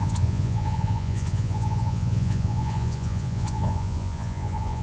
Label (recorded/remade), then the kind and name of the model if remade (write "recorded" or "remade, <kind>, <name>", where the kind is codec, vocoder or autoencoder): remade, vocoder, Vocos